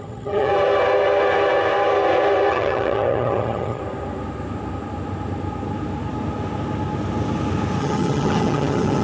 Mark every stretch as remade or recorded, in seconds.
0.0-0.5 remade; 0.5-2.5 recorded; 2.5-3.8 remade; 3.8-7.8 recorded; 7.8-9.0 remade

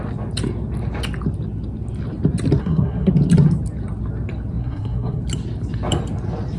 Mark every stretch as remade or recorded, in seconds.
0.0-2.6 recorded; 2.6-3.1 remade; 3.1-4.6 recorded; 4.6-5.2 remade; 5.2-6.6 recorded

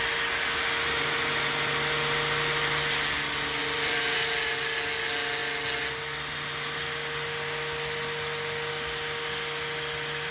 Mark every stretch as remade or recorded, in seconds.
0.0-3.6 recorded; 3.6-4.3 remade; 4.3-10.3 recorded